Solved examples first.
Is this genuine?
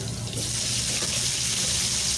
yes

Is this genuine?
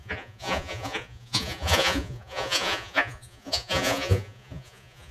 no